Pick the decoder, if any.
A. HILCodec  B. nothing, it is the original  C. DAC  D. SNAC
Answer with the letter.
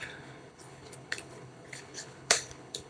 A